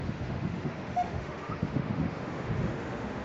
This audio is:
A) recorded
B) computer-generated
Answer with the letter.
B